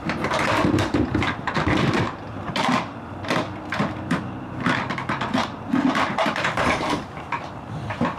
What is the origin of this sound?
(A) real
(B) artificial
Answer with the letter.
B